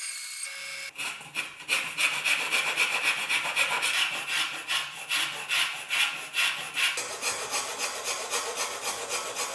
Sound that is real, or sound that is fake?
real